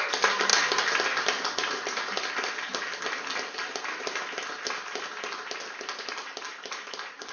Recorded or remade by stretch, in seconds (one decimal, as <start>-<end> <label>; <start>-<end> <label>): 0.0-7.3 recorded